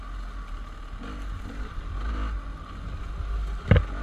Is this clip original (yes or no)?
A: yes